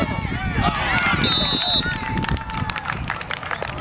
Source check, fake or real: real